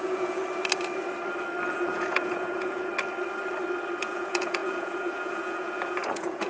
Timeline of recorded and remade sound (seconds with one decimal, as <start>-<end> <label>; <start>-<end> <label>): 0.0-0.4 remade; 0.4-1.7 recorded; 1.7-2.9 remade; 2.9-4.0 recorded; 4.0-6.5 remade

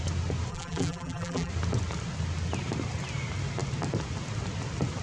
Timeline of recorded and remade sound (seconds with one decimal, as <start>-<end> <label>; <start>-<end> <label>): 0.0-0.5 recorded; 0.5-1.5 remade; 1.5-5.0 recorded

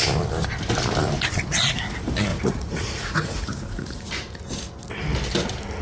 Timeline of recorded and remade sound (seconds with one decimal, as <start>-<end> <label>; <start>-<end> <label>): 0.0-2.3 recorded; 2.3-4.1 remade; 4.1-5.8 recorded